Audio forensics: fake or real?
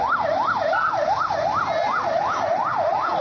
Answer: real